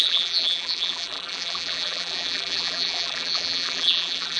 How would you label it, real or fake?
fake